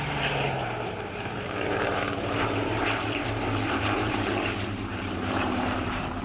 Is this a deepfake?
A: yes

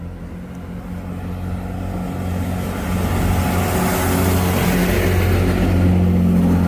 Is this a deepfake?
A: no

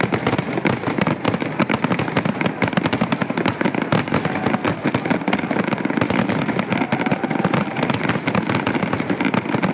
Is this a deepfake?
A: yes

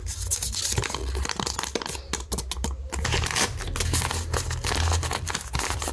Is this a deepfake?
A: no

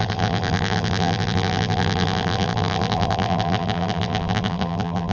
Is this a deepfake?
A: yes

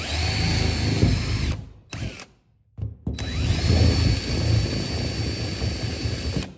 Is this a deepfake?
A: no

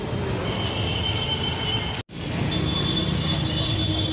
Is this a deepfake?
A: no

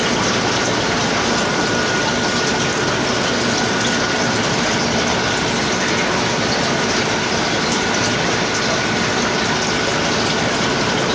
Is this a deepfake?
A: no